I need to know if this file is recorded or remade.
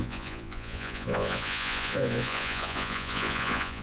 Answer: remade